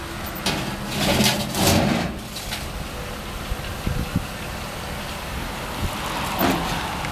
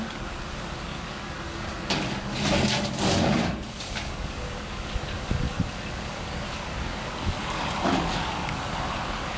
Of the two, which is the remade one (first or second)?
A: second